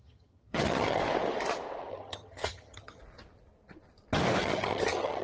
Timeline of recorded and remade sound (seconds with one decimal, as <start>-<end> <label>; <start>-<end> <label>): 0.0-1.0 remade; 1.0-1.9 recorded; 1.9-3.0 remade; 3.0-4.4 recorded; 4.4-5.2 remade